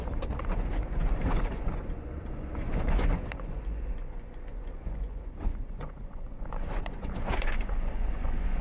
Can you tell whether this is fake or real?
fake